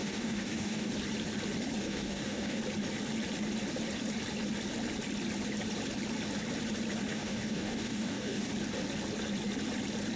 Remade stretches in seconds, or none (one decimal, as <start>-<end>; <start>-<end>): 0.0-0.9; 1.8-2.6; 7.1-8.5